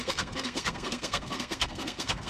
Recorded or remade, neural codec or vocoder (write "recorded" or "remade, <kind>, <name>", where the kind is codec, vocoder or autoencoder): remade, codec, SNAC